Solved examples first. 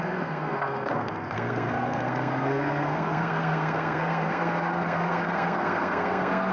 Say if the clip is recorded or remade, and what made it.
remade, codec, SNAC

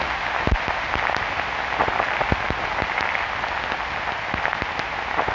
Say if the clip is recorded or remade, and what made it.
recorded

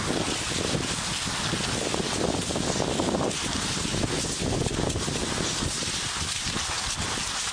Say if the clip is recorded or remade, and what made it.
recorded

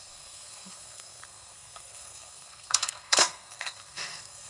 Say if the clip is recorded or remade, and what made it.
remade, codec, SNAC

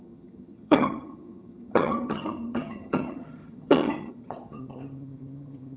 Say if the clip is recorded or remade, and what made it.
remade, vocoder, HiFi-GAN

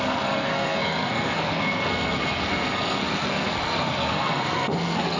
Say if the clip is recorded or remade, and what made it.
remade, codec, SNAC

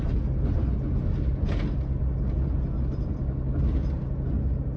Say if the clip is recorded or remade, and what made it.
recorded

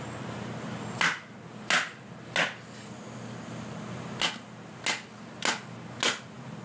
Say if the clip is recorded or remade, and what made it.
recorded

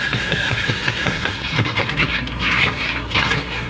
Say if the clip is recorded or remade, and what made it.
remade, codec, SNAC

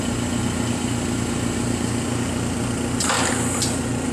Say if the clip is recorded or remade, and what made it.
recorded